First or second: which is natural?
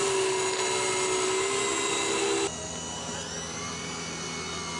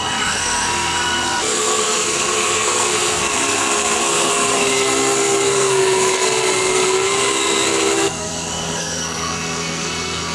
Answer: first